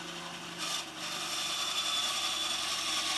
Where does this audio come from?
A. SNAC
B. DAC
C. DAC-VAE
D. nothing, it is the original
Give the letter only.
D